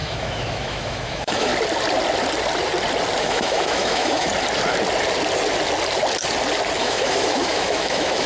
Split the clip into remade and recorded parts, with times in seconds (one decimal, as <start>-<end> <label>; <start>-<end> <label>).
0.0-1.5 remade; 1.5-3.2 recorded; 3.2-4.3 remade; 4.3-6.8 recorded; 6.8-8.3 remade